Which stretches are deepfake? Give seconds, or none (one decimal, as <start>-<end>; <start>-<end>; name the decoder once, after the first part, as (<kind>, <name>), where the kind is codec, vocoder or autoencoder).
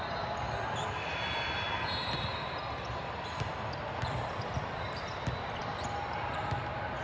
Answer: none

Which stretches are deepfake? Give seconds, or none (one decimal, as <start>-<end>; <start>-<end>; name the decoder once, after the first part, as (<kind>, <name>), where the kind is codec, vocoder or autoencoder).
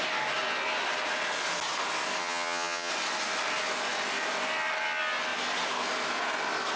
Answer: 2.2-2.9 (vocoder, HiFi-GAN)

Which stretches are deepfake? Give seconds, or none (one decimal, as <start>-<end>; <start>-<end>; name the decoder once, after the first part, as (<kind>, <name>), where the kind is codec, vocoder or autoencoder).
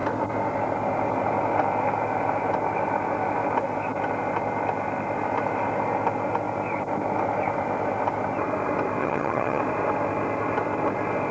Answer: 9.0-9.6 (vocoder, HiFi-GAN)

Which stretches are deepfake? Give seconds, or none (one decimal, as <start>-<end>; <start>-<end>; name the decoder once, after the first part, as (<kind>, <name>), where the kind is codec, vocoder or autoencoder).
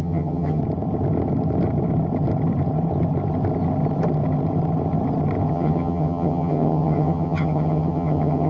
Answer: 0.0-0.6 (vocoder, HiFi-GAN); 5.5-8.5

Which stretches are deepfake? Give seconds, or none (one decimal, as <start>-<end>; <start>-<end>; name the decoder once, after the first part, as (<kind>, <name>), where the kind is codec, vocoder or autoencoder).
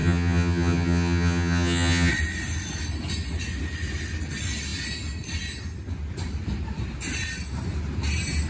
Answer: 0.0-2.1 (vocoder, HiFi-GAN)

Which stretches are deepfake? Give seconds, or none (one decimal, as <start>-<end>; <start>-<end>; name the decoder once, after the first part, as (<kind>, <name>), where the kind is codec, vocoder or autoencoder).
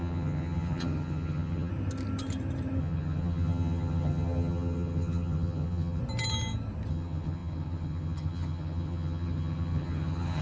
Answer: 0.0-1.7 (vocoder, HiFi-GAN); 2.8-6.0; 6.9-10.4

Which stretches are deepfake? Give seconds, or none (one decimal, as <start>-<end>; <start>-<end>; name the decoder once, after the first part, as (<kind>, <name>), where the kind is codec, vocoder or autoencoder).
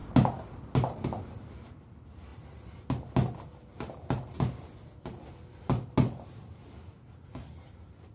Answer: none